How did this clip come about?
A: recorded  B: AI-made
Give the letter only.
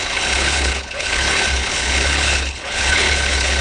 B